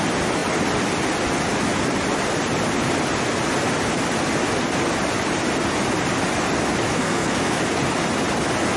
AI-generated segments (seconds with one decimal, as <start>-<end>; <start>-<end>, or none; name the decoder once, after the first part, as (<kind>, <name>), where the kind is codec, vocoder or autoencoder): 6.9-7.6 (codec, SNAC)